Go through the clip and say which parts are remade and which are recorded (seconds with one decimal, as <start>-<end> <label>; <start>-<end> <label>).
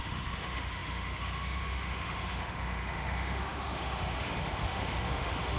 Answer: 0.0-5.6 remade